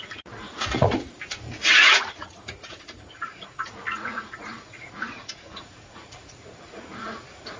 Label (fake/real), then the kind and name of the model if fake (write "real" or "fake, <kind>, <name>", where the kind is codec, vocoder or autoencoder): fake, vocoder, Vocos